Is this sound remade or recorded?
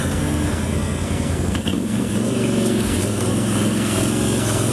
remade